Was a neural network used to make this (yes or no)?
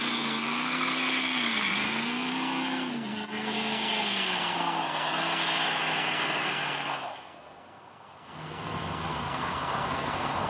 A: yes